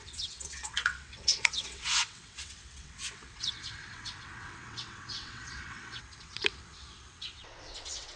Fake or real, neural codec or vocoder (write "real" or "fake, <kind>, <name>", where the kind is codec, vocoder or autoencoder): fake, vocoder, WaveNeXt